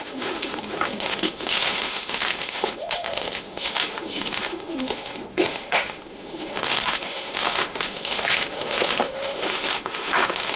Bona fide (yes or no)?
no